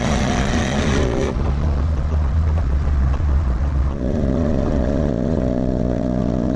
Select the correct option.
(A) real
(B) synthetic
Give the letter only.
B